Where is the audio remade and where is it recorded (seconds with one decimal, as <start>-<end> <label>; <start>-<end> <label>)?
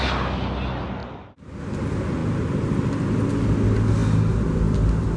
0.0-5.2 recorded